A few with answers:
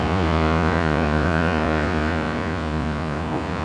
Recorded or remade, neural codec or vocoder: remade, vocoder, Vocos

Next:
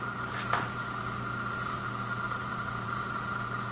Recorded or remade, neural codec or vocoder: recorded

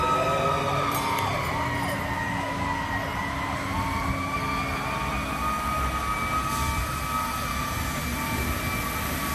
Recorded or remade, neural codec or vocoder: recorded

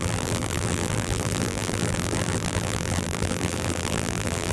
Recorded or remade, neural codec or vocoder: remade, vocoder, BigVGAN v2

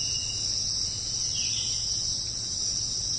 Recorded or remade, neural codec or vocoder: recorded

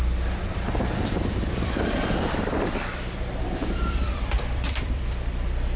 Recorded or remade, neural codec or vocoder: remade, vocoder, BigVGAN v2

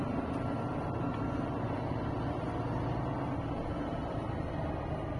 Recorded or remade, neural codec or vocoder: remade, vocoder, BigVGAN v2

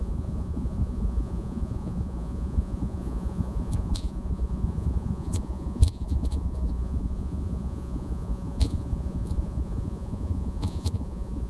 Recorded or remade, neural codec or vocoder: remade, vocoder, Vocos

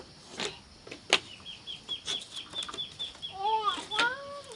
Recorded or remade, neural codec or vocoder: recorded